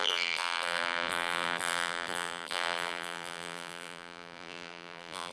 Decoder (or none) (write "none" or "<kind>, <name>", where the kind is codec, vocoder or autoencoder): vocoder, BigVGAN v2